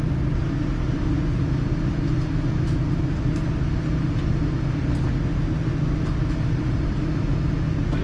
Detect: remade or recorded recorded